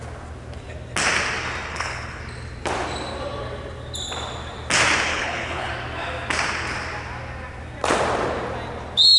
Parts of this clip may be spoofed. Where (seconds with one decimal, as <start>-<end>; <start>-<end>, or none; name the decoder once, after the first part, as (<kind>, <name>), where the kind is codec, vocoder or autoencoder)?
1.7-2.2 (codec, HILCodec); 5.1-5.7